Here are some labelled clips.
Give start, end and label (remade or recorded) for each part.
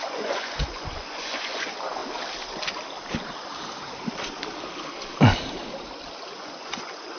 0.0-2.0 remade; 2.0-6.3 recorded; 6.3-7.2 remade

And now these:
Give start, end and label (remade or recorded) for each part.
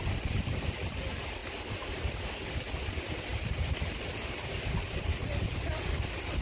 0.0-6.4 recorded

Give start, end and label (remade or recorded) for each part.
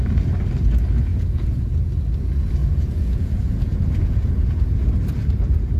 0.0-1.1 recorded; 1.1-1.7 remade; 1.7-2.6 recorded; 2.6-4.8 remade; 4.8-5.8 recorded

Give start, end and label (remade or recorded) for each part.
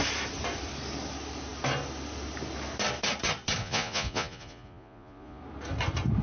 0.0-3.6 recorded; 3.6-5.4 remade; 5.4-6.2 recorded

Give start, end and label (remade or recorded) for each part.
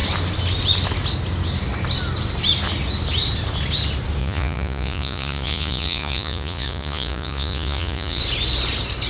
0.0-4.2 recorded; 4.2-8.2 remade; 8.2-9.1 recorded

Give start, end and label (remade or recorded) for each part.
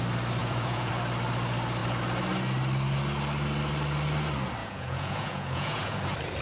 0.0-0.4 recorded; 0.4-0.9 remade; 0.9-4.6 recorded; 4.6-6.0 remade; 6.0-6.4 recorded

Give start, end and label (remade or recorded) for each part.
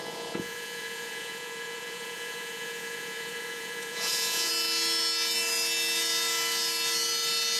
0.0-4.5 remade; 4.5-7.6 recorded